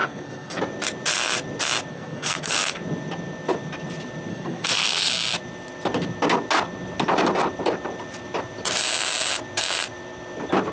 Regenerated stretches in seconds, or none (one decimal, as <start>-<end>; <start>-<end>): 0.0-0.6; 1.9-2.8; 4.3-5.1